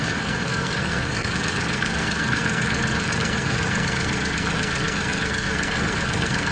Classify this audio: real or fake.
fake